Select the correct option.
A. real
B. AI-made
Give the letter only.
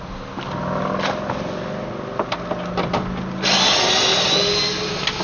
A